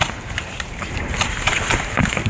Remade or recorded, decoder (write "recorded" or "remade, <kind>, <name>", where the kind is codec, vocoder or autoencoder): remade, vocoder, BigVGAN v2